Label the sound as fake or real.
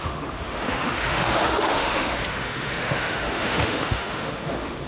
fake